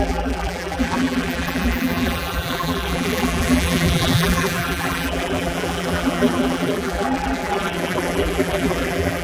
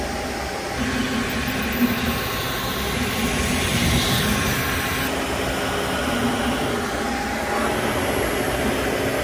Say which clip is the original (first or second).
second